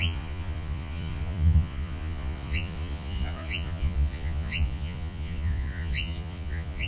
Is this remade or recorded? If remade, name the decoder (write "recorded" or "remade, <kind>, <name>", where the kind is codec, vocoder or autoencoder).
remade, vocoder, Vocos